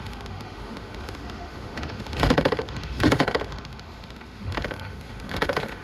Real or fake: fake